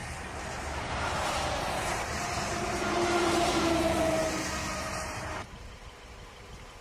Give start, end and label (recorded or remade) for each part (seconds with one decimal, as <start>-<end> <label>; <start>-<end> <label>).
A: 0.0-4.1 remade; 4.1-4.6 recorded; 4.6-5.9 remade; 5.9-6.8 recorded